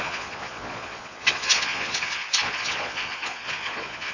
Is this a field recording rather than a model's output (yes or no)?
no